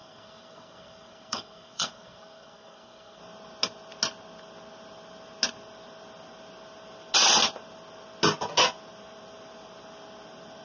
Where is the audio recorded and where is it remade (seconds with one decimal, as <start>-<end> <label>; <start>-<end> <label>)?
0.0-3.2 remade; 3.2-10.6 recorded